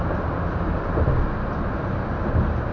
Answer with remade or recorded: recorded